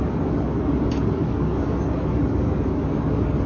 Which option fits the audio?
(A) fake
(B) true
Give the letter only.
A